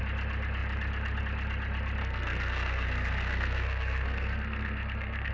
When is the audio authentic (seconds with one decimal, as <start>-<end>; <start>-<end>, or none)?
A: 0.0-2.0